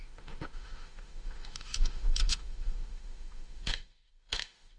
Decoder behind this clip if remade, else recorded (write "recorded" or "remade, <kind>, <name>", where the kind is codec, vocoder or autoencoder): remade, autoencoder, DAC-VAE